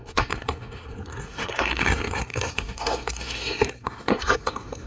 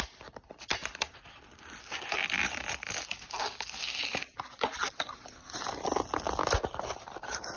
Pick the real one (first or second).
second